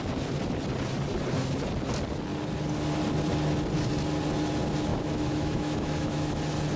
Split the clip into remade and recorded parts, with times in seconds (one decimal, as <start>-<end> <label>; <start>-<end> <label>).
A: 0.0-4.9 recorded; 4.9-6.3 remade; 6.3-6.8 recorded

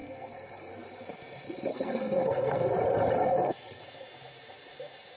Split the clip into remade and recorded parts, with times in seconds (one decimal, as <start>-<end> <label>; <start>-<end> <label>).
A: 0.0-0.7 remade; 0.7-1.7 recorded; 1.7-2.7 remade; 2.7-3.2 recorded; 3.2-3.8 remade; 3.8-5.2 recorded